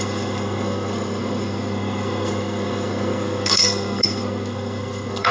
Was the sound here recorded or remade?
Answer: remade